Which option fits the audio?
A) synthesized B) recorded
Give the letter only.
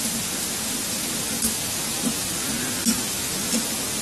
B